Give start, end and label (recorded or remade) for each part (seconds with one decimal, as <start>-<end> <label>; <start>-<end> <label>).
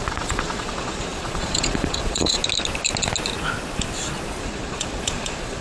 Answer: 0.0-2.4 remade; 2.4-4.4 recorded; 4.4-5.6 remade